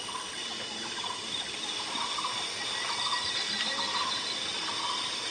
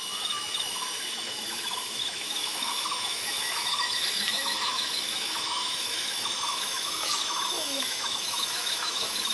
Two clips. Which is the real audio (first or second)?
first